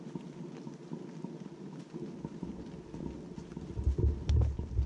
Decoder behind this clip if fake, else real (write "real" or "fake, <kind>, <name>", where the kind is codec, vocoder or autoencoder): real